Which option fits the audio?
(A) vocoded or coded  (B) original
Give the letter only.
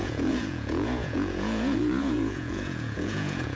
A